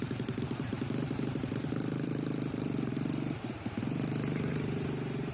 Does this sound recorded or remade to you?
remade